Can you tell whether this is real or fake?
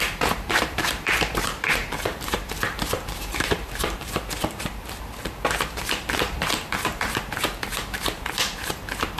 fake